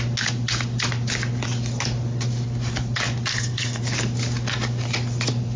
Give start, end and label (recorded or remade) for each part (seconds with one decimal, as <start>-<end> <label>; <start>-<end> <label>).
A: 0.0-3.3 recorded; 3.3-3.8 remade; 3.8-5.6 recorded